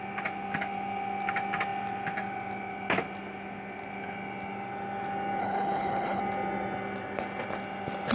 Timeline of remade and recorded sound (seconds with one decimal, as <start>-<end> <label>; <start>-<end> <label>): 0.0-5.4 recorded; 5.4-6.2 remade; 6.2-8.1 recorded

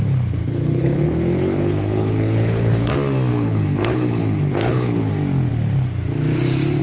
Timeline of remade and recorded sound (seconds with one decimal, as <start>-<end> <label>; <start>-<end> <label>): 0.0-0.4 recorded; 0.4-2.9 remade; 2.9-3.3 recorded; 3.3-5.1 remade; 5.1-6.8 recorded

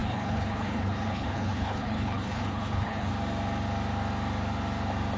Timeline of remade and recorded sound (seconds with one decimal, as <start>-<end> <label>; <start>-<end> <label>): 0.0-3.1 remade; 3.1-5.2 recorded

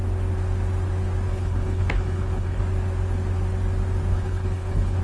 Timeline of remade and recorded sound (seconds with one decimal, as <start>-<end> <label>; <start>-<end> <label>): 0.0-1.3 recorded; 1.3-2.6 remade; 2.6-4.1 recorded; 4.1-5.0 remade

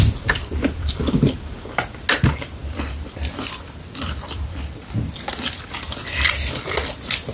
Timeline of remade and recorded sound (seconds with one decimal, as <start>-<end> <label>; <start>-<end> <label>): 0.0-7.3 recorded